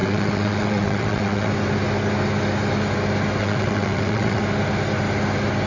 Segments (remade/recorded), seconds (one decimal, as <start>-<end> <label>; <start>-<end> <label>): 0.0-1.5 remade; 1.5-3.4 recorded; 3.4-4.4 remade; 4.4-5.7 recorded